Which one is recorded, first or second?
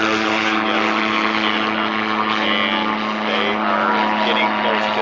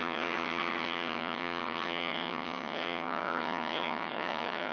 first